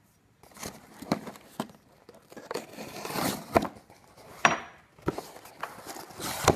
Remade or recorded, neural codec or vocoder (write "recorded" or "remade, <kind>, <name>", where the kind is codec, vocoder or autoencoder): remade, vocoder, BigVGAN v2